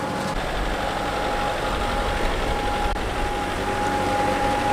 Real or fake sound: real